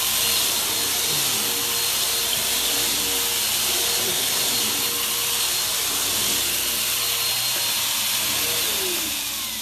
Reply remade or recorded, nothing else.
recorded